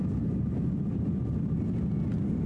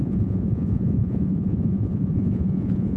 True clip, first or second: first